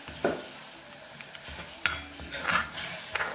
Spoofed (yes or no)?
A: no